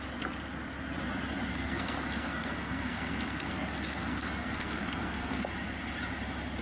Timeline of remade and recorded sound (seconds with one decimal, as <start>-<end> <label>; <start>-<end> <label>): 0.0-1.5 recorded; 1.5-5.5 remade; 5.5-6.6 recorded